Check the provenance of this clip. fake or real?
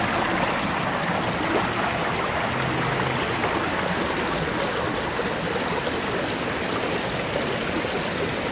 real